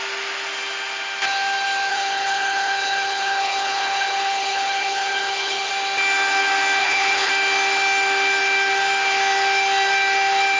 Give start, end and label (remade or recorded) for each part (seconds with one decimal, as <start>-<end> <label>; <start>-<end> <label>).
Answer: 0.0-1.9 recorded; 1.9-5.7 remade; 5.7-6.8 recorded; 6.8-7.3 remade; 7.3-10.6 recorded

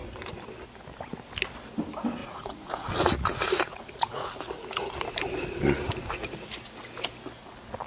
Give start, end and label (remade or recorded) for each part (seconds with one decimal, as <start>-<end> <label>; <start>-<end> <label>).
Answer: 0.0-2.2 recorded; 2.2-4.3 remade; 4.3-7.9 recorded

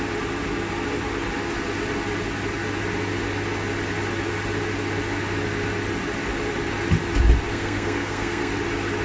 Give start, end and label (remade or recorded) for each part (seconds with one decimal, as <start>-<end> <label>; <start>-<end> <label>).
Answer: 0.0-7.5 recorded; 7.5-8.5 remade; 8.5-9.0 recorded

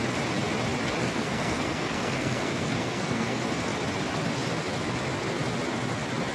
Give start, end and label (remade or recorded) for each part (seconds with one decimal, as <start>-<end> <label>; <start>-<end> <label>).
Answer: 0.0-1.0 recorded; 1.0-3.4 remade; 3.4-6.3 recorded

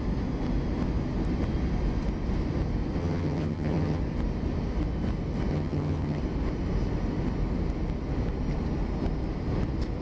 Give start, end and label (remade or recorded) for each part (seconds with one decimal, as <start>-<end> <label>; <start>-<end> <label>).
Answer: 0.0-3.0 recorded; 3.0-4.0 remade; 4.0-5.5 recorded; 5.5-6.2 remade; 6.2-10.0 recorded

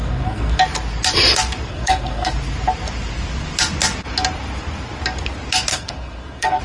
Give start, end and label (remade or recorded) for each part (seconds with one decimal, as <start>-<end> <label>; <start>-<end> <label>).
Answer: 0.0-0.6 remade; 0.6-1.7 recorded; 1.7-2.3 remade; 2.3-5.7 recorded; 5.7-6.6 remade

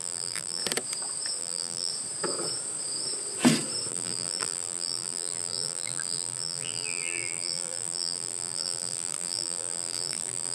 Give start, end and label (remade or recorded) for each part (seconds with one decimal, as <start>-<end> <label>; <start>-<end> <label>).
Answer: 0.0-0.6 remade; 0.6-1.4 recorded; 1.4-1.9 remade; 1.9-3.9 recorded; 3.9-10.5 remade

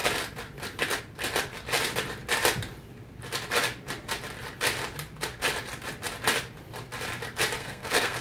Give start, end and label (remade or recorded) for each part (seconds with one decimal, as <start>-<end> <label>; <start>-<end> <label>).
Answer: 0.0-7.6 recorded; 7.6-8.2 remade